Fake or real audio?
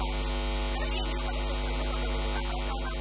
real